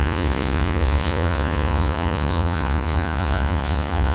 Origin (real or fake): fake